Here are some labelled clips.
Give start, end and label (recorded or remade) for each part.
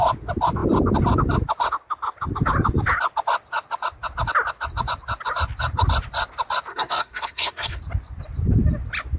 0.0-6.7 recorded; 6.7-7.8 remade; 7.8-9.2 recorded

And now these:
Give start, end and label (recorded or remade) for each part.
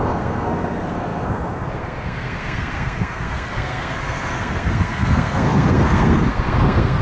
0.0-7.0 remade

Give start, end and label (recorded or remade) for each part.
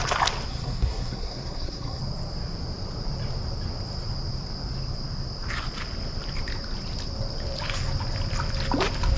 0.0-0.5 recorded; 0.5-2.0 remade; 2.0-9.2 recorded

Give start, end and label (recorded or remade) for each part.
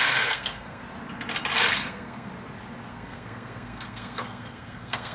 0.0-0.8 remade; 0.8-1.6 recorded; 1.6-2.3 remade; 2.3-2.9 recorded; 2.9-5.1 remade